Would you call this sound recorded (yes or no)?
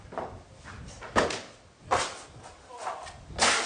yes